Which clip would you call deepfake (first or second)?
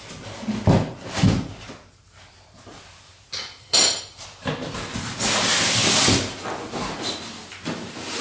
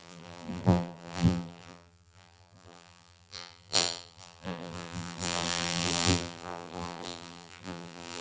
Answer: second